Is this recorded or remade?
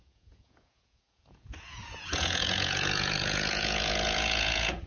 remade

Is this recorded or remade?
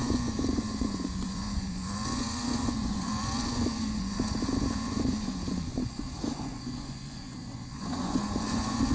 remade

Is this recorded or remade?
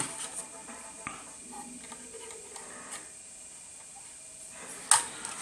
recorded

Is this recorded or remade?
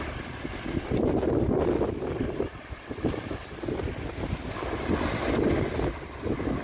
recorded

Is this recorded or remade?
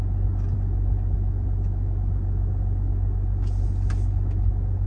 recorded